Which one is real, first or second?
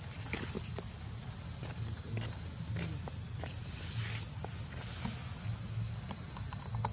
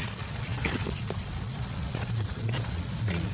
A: first